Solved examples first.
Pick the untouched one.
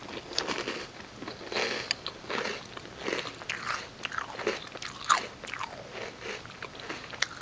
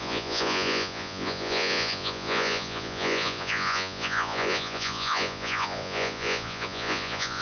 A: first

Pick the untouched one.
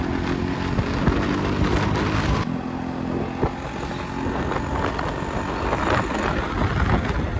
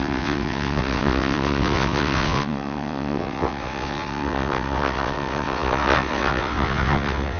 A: first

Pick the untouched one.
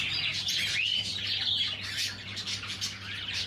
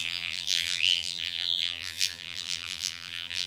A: first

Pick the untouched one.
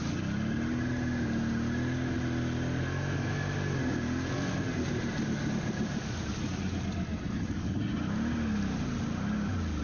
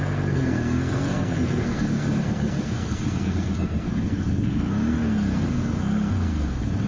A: first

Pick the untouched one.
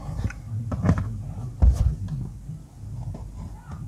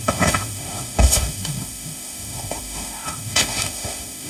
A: first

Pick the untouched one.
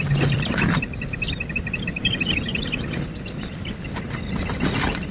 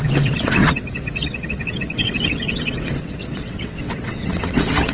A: first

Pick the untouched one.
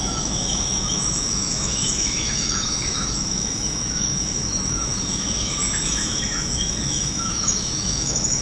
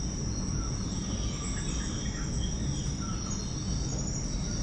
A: second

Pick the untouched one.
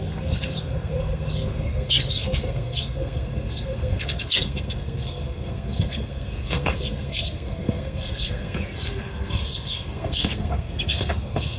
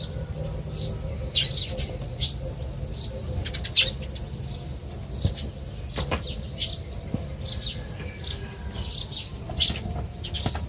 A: second